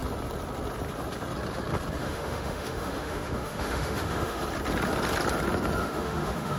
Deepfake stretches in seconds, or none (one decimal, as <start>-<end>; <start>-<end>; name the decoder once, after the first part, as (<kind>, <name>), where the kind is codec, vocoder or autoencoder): 2.0-4.4 (autoencoder, DAC-VAE); 5.8-6.6